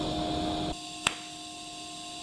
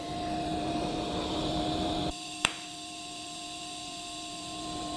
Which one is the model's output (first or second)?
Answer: second